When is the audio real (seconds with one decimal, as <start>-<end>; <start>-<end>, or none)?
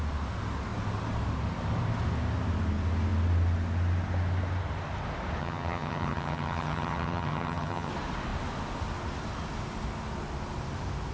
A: 0.0-5.4; 7.9-11.1